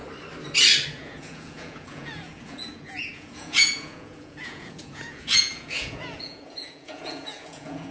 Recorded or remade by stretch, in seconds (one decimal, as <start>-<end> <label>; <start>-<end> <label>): 0.0-0.9 recorded; 0.9-7.9 remade